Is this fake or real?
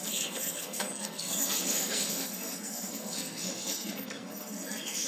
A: fake